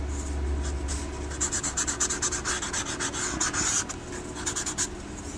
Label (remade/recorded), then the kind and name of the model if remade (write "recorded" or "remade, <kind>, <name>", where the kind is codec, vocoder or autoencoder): recorded